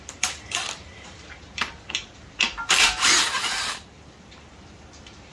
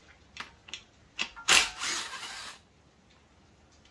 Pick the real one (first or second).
second